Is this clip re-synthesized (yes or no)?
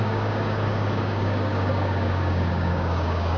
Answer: yes